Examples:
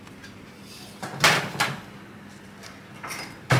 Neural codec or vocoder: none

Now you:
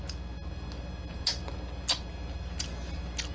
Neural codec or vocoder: none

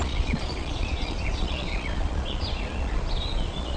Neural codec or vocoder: vocoder, Vocos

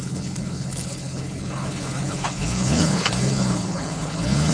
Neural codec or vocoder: codec, HILCodec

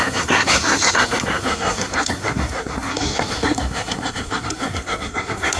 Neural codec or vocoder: codec, SNAC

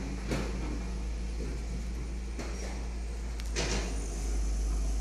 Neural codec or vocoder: none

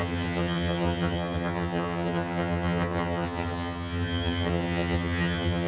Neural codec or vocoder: vocoder, HiFi-GAN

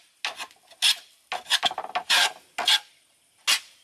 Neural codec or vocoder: none